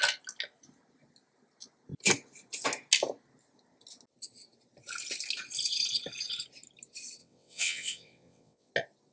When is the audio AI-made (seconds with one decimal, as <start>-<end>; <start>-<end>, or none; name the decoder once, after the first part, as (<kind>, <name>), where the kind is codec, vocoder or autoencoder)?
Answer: 7.2-8.7 (vocoder, WaveNeXt)